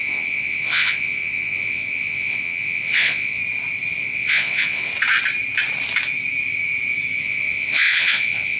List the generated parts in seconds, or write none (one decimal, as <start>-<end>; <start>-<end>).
0.0-3.4; 4.0-4.9; 7.2-8.6